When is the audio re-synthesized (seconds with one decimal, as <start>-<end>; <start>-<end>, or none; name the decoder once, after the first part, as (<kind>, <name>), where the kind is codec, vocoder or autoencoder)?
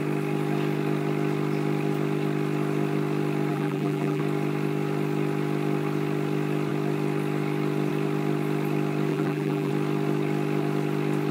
3.5-4.2 (vocoder, BigVGAN v2); 9.1-9.7